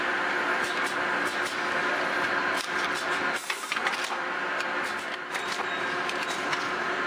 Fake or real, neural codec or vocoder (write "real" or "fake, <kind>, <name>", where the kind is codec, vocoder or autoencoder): real